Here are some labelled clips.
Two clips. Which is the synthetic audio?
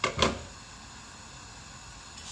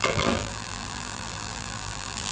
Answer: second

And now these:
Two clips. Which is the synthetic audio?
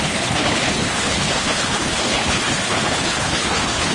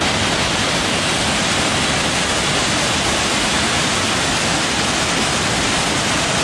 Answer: first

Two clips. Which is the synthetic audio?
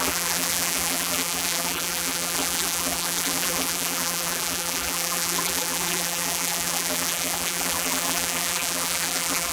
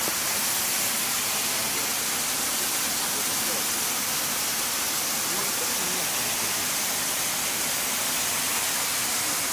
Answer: first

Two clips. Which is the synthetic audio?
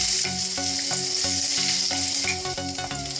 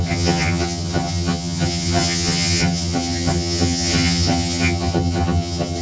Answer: second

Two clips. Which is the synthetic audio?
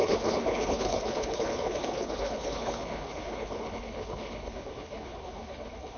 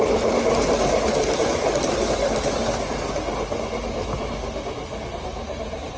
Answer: first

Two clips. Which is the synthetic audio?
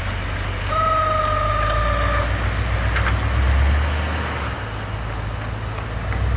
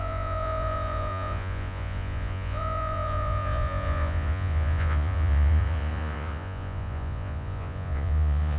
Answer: second